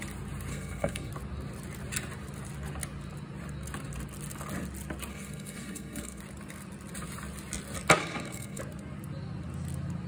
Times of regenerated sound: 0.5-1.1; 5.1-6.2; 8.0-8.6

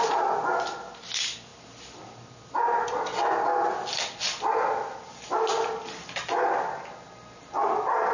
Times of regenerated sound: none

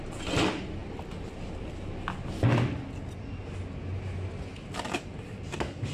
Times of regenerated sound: none

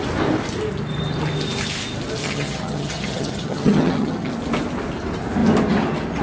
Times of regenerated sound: 2.2-4.3

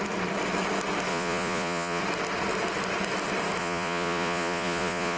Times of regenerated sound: 1.1-2.0; 3.6-5.2